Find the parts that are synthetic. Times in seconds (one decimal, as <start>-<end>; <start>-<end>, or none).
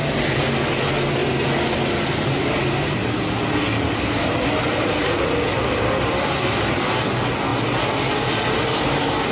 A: none